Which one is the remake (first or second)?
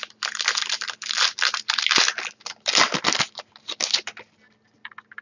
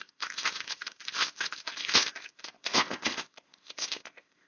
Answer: second